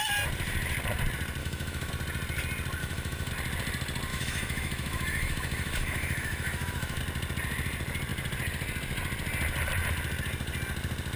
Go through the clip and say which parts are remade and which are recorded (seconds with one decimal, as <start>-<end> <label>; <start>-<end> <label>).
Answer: 0.0-1.4 recorded; 1.4-1.9 remade; 1.9-2.8 recorded; 2.8-3.3 remade; 3.3-4.1 recorded; 4.1-7.0 remade; 7.0-11.2 recorded